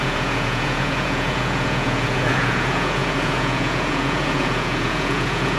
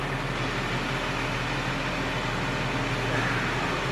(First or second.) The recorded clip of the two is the second